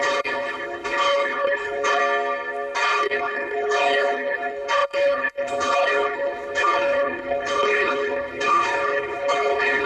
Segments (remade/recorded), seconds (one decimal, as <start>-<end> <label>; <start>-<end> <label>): 0.0-2.0 remade; 2.0-2.8 recorded; 2.8-9.9 remade